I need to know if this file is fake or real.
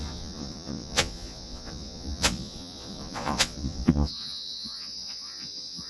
fake